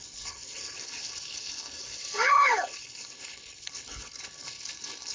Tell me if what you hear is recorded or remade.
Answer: remade